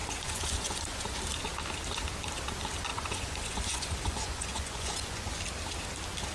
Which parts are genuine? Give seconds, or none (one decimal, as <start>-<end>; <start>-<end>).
1.2-2.9; 5.4-6.3